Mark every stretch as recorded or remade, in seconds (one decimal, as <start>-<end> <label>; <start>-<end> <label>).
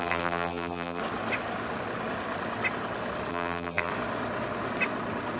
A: 0.0-1.0 remade; 1.0-3.3 recorded; 3.3-3.9 remade; 3.9-5.4 recorded